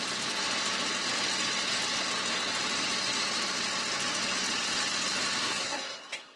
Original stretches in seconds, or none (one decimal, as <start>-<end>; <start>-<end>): 0.0-5.4